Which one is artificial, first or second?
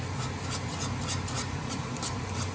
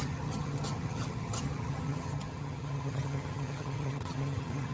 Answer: second